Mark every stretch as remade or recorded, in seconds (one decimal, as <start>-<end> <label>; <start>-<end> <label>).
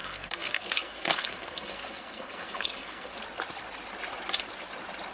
0.0-3.1 remade; 3.1-5.1 recorded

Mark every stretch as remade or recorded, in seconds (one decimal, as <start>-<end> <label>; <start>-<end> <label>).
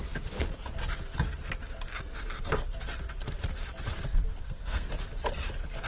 0.0-4.4 recorded; 4.4-4.9 remade; 4.9-5.9 recorded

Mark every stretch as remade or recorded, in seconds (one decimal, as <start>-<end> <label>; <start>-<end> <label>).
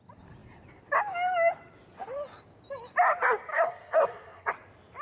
0.0-3.5 recorded; 3.5-4.5 remade; 4.5-5.0 recorded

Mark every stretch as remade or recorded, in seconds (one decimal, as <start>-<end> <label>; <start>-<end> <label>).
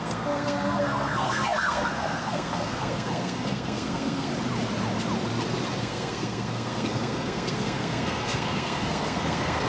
0.0-4.3 remade; 4.3-5.8 recorded; 5.8-9.7 remade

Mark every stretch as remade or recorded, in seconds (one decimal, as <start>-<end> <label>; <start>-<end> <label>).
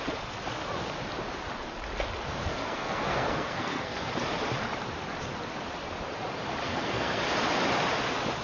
0.0-2.4 recorded; 2.4-4.1 remade; 4.1-6.6 recorded; 6.6-7.2 remade; 7.2-8.4 recorded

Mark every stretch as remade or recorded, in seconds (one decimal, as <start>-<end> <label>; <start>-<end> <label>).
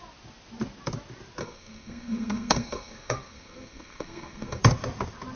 0.0-1.4 recorded; 1.4-4.6 remade; 4.6-5.4 recorded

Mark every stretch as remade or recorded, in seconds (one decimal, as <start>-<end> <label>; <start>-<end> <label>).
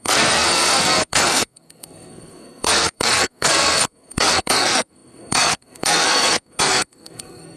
0.0-7.6 remade